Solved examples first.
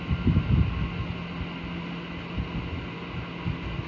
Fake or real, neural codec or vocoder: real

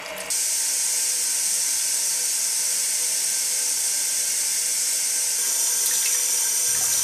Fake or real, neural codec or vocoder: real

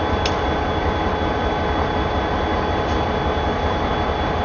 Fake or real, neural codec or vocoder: real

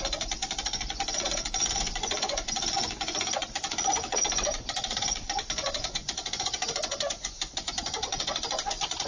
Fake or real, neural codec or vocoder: fake, vocoder, Vocos